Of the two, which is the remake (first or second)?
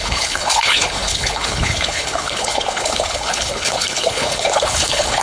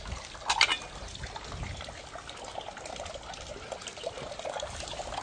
first